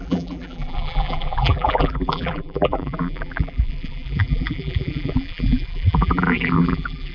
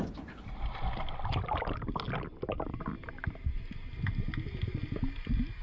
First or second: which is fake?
first